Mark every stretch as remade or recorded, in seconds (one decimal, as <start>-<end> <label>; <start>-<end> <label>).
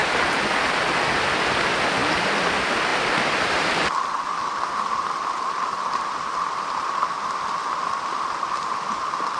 0.0-2.0 recorded; 2.0-2.5 remade; 2.5-2.9 recorded; 2.9-7.1 remade; 7.1-9.4 recorded